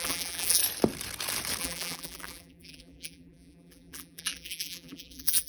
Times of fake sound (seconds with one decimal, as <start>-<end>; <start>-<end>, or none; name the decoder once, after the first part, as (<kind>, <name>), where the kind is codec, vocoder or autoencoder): 0.0-0.6 (vocoder, BigVGAN v2); 1.6-5.5